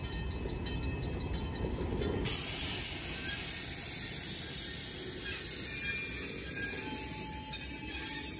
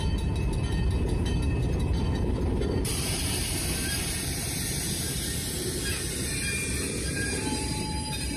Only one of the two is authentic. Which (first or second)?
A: first